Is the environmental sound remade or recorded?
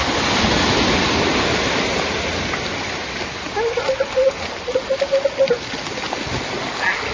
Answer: recorded